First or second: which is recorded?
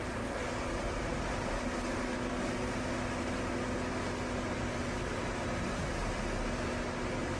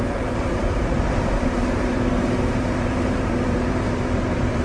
first